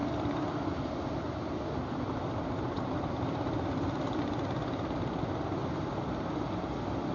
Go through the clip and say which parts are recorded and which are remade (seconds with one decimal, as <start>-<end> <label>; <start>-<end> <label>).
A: 0.0-4.2 remade; 4.2-5.6 recorded; 5.6-6.3 remade; 6.3-7.1 recorded